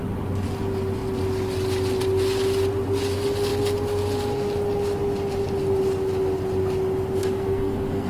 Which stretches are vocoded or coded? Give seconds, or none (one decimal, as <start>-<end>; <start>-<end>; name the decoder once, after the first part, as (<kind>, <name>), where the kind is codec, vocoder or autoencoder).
7.2-8.1 (codec, SNAC)